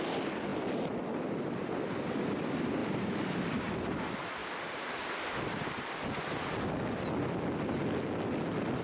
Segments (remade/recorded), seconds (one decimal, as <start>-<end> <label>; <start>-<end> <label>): 0.0-2.8 recorded; 2.8-3.7 remade; 3.7-8.8 recorded